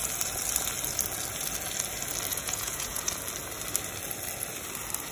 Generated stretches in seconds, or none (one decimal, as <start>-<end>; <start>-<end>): 2.3-3.1